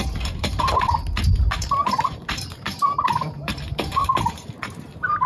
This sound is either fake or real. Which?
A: fake